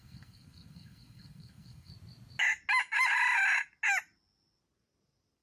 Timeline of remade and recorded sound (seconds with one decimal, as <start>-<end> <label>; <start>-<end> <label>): 0.0-1.9 remade; 1.9-5.4 recorded